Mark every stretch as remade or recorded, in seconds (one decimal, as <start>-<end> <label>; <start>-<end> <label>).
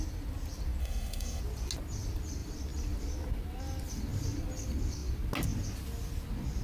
0.0-0.8 recorded; 0.8-1.4 remade; 1.4-6.6 recorded